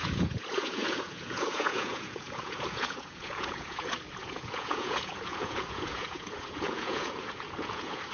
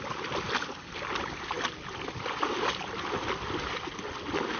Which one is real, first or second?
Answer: second